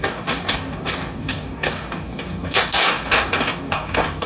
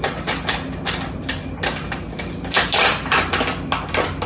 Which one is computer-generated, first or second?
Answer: first